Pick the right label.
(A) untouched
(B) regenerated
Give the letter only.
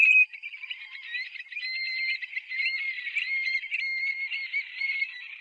B